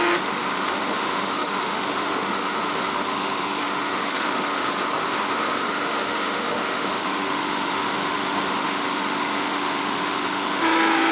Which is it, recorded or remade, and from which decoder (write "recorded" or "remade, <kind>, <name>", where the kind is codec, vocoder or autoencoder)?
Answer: remade, autoencoder, DAC-VAE